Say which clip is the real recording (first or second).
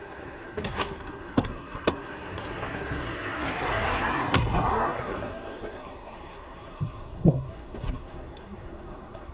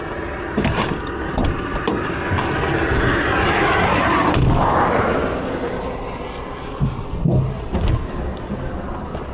second